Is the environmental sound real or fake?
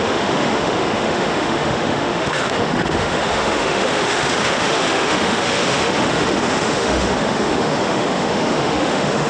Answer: fake